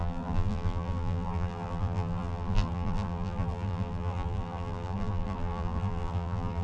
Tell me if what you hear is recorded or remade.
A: remade